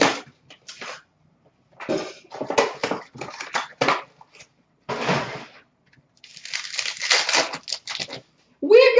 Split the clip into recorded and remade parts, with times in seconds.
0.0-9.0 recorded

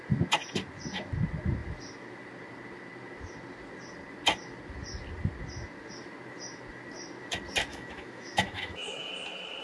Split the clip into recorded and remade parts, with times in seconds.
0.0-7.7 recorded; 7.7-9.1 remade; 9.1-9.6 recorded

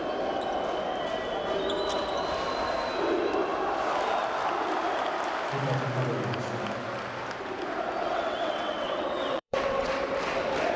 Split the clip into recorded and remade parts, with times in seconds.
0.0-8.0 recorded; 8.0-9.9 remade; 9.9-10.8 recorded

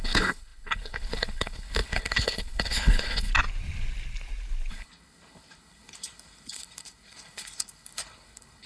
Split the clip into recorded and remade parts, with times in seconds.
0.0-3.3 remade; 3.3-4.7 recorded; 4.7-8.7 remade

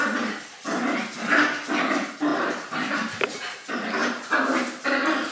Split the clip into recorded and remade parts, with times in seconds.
0.0-2.3 recorded; 2.3-3.2 remade; 3.2-4.0 recorded; 4.0-4.6 remade; 4.6-5.3 recorded

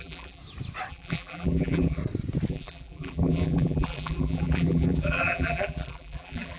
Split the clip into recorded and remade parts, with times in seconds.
0.0-0.4 remade; 0.4-0.9 recorded; 0.9-2.0 remade; 2.0-2.5 recorded; 2.5-6.6 remade

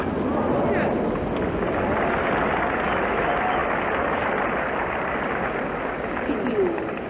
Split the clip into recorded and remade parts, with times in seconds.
0.0-7.1 recorded

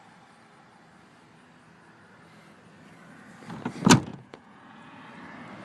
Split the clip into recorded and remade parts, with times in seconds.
0.0-4.1 recorded; 4.1-5.0 remade; 5.0-5.6 recorded